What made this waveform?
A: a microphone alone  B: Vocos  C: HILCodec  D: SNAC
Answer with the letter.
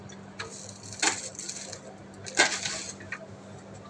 A